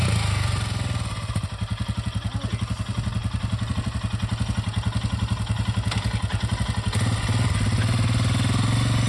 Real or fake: real